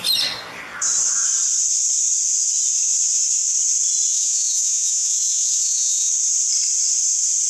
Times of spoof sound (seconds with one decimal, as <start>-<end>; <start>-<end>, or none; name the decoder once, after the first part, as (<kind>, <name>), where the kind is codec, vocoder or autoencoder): 4.1-6.1 (vocoder, Vocos)